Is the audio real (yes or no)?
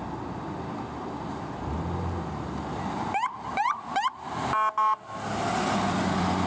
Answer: yes